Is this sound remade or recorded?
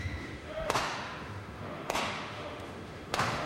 remade